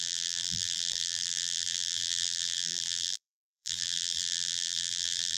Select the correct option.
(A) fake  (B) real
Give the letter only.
A